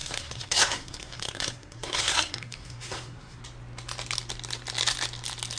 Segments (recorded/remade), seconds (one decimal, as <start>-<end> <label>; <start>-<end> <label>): 0.0-3.4 remade; 3.4-5.6 recorded